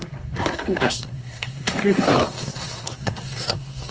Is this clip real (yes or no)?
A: no